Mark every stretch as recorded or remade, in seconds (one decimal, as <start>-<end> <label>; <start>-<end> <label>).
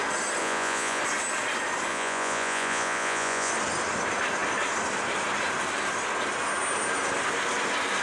0.0-0.4 recorded; 0.4-1.0 remade; 1.0-1.9 recorded; 1.9-3.5 remade; 3.5-8.0 recorded